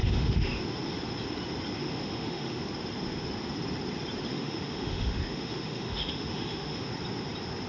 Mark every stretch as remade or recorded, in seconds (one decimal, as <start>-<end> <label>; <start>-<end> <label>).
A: 0.0-0.6 remade; 0.6-1.8 recorded; 1.8-2.6 remade; 2.6-4.3 recorded; 4.3-6.9 remade; 6.9-7.7 recorded